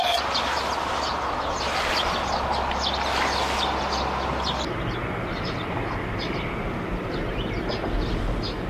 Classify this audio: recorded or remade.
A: recorded